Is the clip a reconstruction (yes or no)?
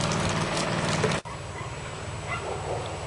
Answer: no